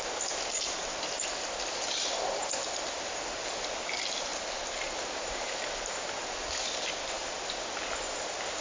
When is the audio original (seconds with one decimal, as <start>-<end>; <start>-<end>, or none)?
0.0-8.6